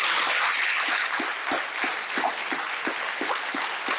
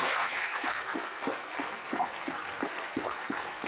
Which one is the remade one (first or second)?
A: second